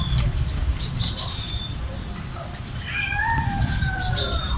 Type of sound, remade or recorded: remade